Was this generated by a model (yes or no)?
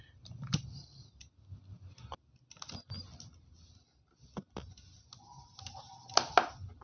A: no